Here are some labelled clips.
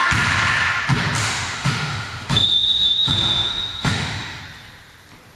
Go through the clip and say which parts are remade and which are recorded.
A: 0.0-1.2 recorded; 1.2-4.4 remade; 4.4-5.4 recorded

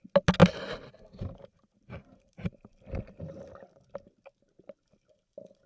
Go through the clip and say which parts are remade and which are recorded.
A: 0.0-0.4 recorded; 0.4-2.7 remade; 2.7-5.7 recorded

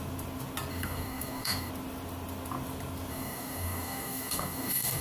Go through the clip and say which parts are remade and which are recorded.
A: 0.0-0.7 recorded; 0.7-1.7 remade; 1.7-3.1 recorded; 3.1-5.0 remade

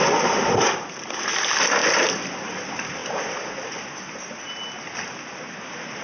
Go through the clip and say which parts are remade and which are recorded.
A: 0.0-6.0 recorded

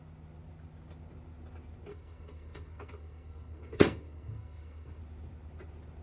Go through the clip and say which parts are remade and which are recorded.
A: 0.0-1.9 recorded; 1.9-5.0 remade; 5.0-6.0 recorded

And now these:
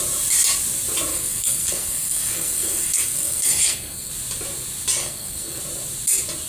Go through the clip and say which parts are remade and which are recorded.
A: 0.0-1.1 recorded; 1.1-4.1 remade; 4.1-5.0 recorded; 5.0-5.6 remade; 5.6-6.5 recorded

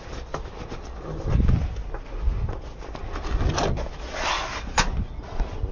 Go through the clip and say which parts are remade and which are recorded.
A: 0.0-5.7 recorded